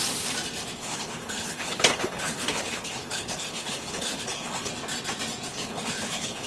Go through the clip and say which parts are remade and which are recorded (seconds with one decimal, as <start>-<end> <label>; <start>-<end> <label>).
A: 0.0-0.8 recorded; 0.8-4.7 remade; 4.7-5.5 recorded; 5.5-6.5 remade